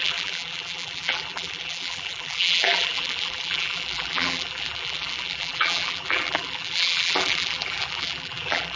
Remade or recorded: remade